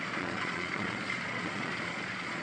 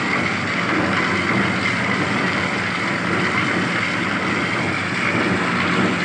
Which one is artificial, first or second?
first